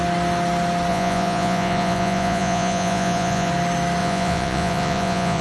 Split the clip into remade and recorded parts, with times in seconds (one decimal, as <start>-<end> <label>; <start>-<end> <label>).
0.0-0.9 recorded; 0.9-3.5 remade; 3.5-4.0 recorded; 4.0-5.4 remade